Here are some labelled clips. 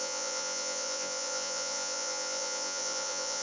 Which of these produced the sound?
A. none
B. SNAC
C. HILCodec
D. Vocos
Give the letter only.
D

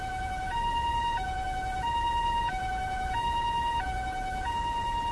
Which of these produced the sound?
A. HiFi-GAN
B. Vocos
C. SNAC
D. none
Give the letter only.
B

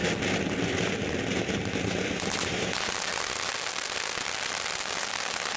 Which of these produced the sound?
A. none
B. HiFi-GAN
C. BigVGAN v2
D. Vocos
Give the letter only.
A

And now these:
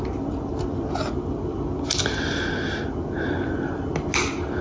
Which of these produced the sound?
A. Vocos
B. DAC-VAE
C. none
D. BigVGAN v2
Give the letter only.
C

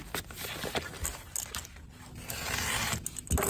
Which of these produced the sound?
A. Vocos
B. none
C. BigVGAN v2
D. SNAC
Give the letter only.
B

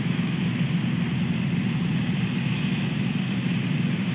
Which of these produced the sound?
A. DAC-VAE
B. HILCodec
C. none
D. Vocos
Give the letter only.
C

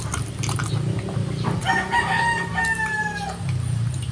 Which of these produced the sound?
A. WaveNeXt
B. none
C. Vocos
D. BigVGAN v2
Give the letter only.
B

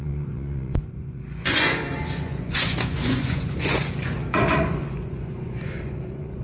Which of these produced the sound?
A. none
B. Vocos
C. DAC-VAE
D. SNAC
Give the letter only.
B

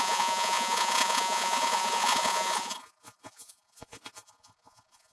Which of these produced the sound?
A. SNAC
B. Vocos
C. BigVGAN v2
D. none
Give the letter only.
B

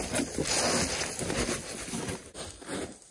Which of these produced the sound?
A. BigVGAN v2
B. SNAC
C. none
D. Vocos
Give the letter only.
C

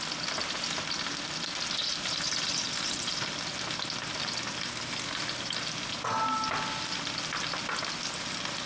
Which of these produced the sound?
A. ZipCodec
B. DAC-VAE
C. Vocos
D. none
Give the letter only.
D